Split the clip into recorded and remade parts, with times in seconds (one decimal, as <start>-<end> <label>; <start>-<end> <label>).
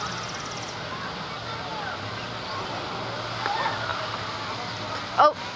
0.0-5.6 recorded